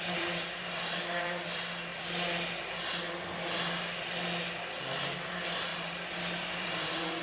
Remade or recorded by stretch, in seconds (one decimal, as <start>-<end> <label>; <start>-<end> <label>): 0.0-1.9 remade; 1.9-5.3 recorded; 5.3-7.2 remade